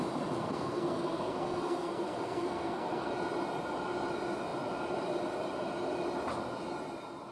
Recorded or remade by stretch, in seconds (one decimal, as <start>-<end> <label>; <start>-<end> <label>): 0.0-0.4 recorded; 0.4-3.1 remade; 3.1-7.3 recorded